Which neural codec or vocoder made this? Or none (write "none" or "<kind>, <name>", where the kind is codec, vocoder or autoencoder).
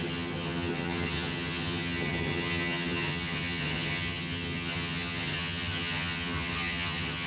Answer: vocoder, HiFi-GAN